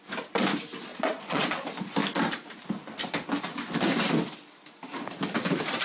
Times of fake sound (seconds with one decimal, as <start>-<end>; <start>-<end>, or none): 0.9-1.6